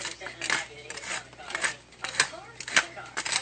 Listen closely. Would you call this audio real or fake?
real